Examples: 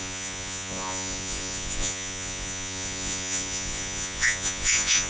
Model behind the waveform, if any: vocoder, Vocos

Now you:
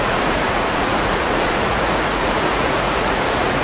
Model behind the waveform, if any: vocoder, Vocos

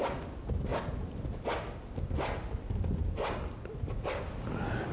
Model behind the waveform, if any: none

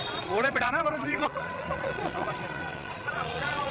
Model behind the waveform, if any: vocoder, Vocos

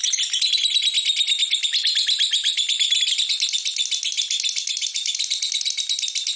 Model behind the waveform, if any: none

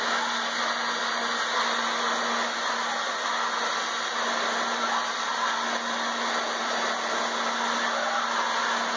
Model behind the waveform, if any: none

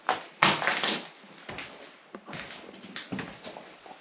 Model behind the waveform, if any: none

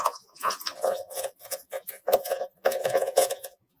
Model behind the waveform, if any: vocoder, Vocos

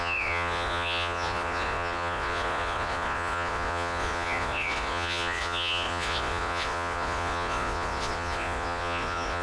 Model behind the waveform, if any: vocoder, Vocos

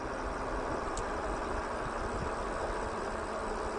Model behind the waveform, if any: none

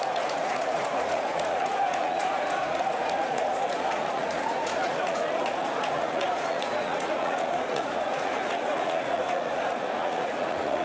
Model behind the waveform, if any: vocoder, Vocos